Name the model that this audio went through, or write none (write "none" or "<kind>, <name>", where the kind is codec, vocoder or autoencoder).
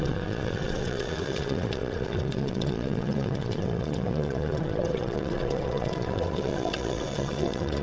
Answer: vocoder, WaveNeXt